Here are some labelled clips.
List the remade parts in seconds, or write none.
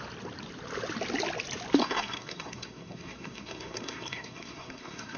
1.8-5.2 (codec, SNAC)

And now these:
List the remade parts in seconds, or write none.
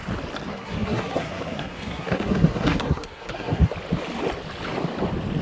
0.5-3.7 (codec, SNAC)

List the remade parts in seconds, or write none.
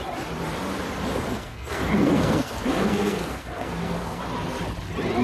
1.1-4.2 (codec, SNAC)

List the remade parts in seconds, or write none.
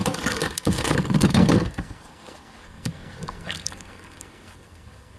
0.0-5.2 (codec, SNAC)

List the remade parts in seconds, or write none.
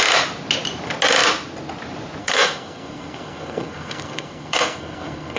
2.2-5.4 (codec, SNAC)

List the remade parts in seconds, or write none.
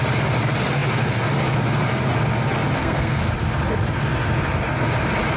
2.8-3.3 (codec, SNAC)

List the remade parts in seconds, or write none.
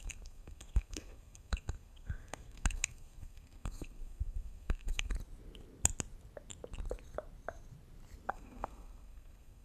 0.0-5.1 (codec, SNAC); 8.3-9.6